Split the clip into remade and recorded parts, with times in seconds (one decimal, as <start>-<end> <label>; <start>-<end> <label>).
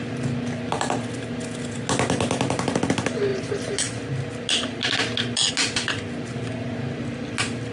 0.0-7.7 recorded